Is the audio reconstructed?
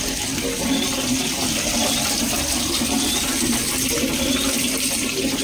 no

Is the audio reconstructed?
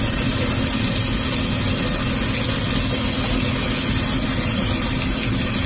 no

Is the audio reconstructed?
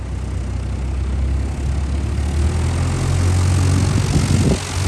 no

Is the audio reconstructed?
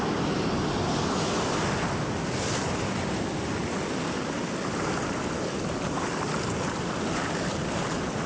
no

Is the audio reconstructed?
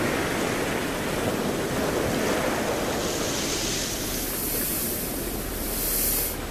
no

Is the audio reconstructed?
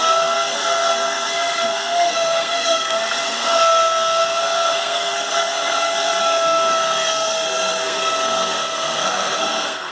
yes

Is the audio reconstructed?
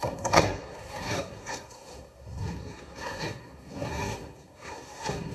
yes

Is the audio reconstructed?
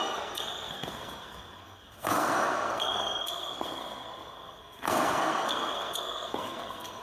yes